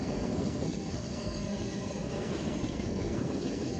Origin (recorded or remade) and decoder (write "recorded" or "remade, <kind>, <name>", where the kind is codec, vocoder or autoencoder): remade, codec, SNAC